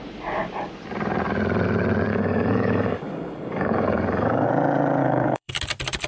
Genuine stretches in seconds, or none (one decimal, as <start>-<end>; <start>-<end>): 0.0-2.1; 4.5-5.0; 5.5-6.1